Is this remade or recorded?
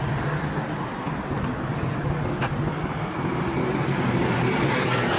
recorded